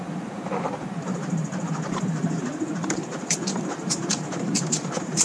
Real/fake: fake